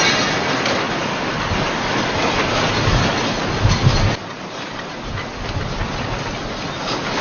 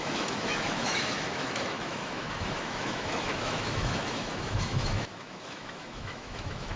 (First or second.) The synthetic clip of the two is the second